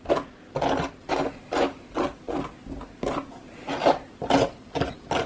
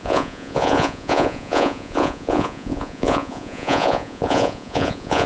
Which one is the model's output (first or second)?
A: second